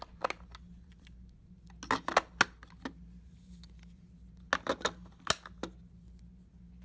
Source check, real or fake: real